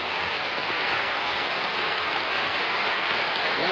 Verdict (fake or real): fake